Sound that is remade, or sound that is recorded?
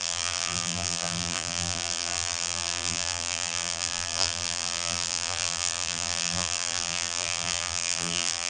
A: remade